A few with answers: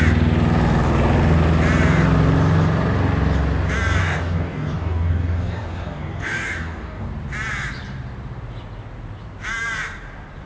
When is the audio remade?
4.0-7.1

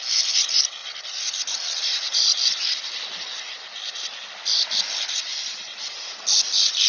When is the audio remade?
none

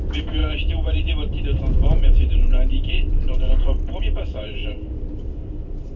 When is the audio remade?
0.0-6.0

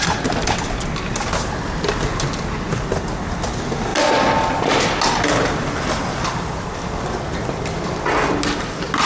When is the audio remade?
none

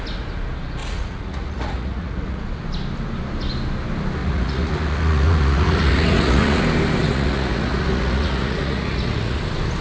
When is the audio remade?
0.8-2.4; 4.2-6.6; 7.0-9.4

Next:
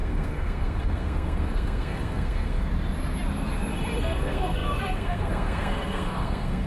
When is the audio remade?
0.0-2.7; 4.0-6.7